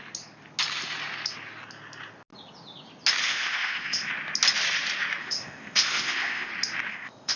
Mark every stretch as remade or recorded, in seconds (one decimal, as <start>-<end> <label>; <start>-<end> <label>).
0.0-3.2 recorded; 3.2-4.1 remade; 4.1-5.2 recorded; 5.2-6.5 remade; 6.5-6.9 recorded; 6.9-7.4 remade